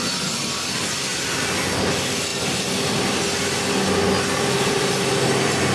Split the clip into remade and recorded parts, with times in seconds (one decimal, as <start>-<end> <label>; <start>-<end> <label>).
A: 0.0-5.7 recorded